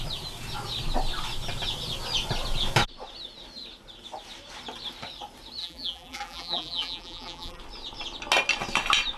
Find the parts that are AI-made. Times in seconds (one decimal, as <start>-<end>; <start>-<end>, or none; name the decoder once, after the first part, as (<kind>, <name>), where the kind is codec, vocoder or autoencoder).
5.6-7.6 (vocoder, BigVGAN v2)